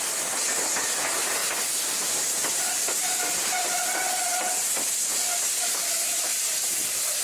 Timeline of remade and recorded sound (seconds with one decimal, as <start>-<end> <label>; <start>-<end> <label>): 0.0-7.2 recorded